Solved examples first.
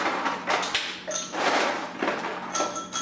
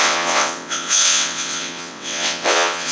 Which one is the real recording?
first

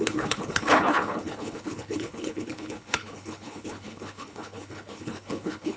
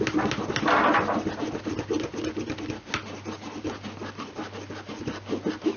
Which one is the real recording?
second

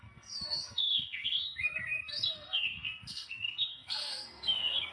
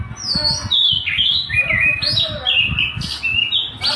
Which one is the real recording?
second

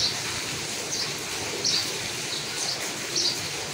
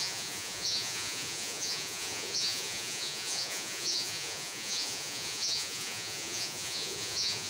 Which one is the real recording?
first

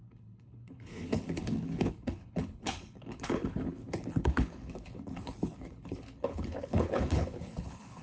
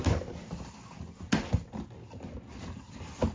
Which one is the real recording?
second